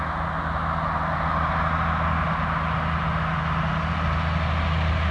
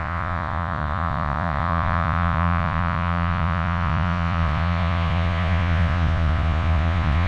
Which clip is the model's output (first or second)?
second